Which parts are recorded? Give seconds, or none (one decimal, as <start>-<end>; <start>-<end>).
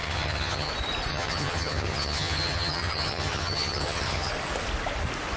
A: 0.7-1.1; 4.3-5.4